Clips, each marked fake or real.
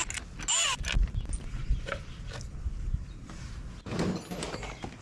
real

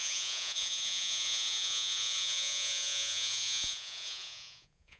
fake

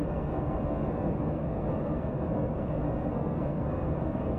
fake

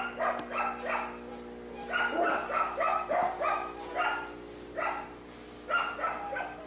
real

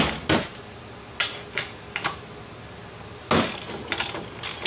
real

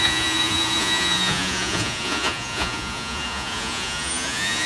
fake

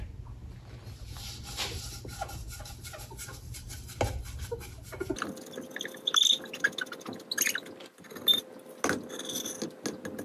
real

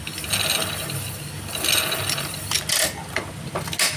real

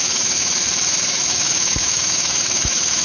fake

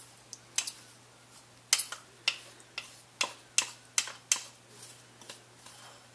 real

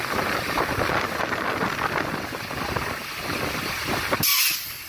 real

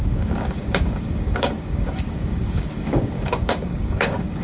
fake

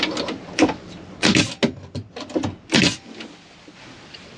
real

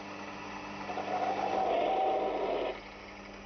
real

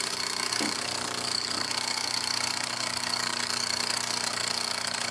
fake